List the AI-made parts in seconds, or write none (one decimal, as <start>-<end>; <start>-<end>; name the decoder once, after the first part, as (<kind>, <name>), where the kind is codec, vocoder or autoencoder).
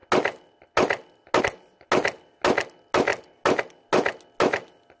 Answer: none